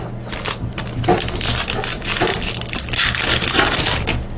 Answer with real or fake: real